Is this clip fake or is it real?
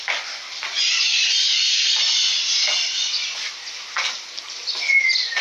real